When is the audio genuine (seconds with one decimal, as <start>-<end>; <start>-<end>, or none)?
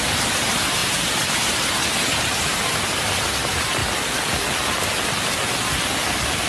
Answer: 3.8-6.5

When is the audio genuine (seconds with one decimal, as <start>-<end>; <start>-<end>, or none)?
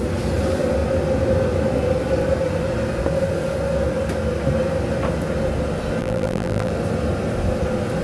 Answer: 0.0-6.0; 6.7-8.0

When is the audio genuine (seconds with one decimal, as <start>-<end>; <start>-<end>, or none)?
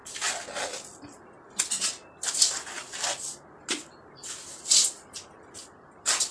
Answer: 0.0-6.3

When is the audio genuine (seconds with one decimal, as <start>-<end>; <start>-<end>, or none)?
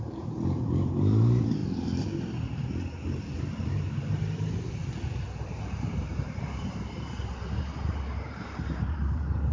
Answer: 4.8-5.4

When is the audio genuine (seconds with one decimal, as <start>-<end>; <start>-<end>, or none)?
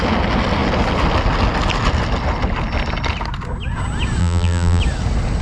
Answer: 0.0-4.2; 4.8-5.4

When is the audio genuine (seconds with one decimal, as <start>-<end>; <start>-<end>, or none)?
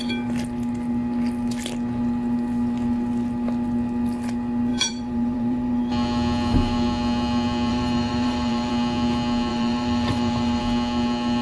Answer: 0.0-4.7; 5.9-7.7; 8.7-9.5; 10.6-11.4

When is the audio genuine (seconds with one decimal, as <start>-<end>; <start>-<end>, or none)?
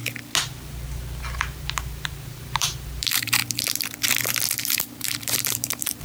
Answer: 0.0-1.4; 3.4-4.5